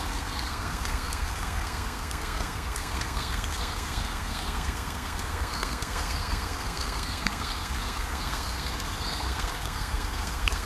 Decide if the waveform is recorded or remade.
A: remade